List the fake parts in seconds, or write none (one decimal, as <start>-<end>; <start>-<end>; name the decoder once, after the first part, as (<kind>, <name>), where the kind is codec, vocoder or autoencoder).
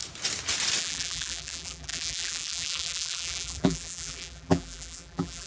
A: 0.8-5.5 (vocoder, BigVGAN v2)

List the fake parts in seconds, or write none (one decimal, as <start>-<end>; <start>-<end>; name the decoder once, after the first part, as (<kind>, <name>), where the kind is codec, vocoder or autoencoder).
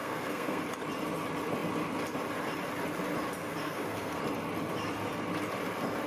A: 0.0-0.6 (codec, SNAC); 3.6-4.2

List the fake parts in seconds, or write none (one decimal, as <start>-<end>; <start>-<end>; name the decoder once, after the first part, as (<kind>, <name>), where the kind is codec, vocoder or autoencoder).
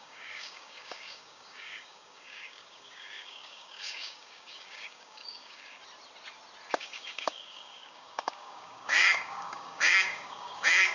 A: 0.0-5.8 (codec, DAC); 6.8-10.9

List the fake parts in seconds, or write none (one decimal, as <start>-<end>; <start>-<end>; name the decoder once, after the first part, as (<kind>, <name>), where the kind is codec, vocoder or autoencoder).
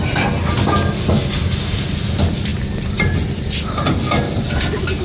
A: none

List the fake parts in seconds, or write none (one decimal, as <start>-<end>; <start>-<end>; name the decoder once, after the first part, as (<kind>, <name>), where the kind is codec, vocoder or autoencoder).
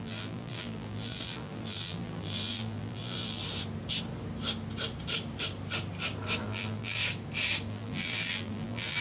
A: 0.0-3.4 (vocoder, BigVGAN v2); 6.4-7.0; 7.7-9.0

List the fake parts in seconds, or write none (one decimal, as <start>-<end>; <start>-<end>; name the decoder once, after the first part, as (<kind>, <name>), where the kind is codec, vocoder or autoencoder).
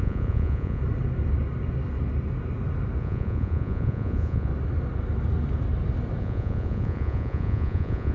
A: 0.0-0.8 (vocoder, Vocos); 3.0-4.5; 6.2-8.1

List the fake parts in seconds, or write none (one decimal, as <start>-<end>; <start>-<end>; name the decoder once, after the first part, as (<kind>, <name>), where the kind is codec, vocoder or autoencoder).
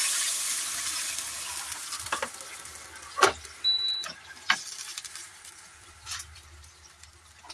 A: none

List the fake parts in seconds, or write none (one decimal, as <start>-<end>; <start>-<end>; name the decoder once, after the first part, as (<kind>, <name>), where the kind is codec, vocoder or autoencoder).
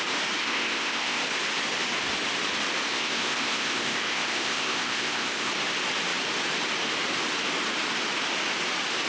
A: 0.4-1.2 (codec, ZipCodec); 2.9-5.5